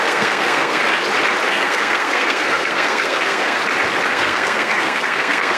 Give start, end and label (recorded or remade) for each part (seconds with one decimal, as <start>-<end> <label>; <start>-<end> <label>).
0.0-0.8 remade; 0.8-1.5 recorded; 1.5-3.6 remade; 3.6-4.1 recorded; 4.1-5.6 remade